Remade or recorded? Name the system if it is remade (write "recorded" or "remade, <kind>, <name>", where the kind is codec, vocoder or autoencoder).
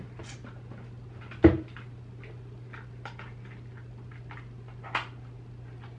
recorded